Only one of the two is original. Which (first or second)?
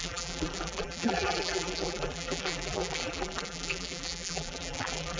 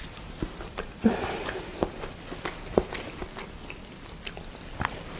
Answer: second